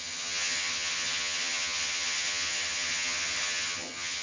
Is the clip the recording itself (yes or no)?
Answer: no